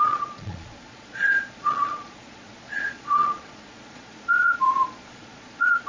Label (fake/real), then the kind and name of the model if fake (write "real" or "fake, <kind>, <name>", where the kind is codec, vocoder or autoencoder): fake, vocoder, Vocos